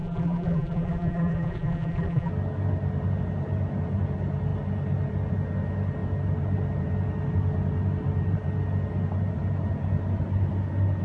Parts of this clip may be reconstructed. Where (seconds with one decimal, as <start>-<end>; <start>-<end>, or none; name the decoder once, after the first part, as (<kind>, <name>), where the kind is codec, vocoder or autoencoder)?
0.0-2.3 (vocoder, BigVGAN v2)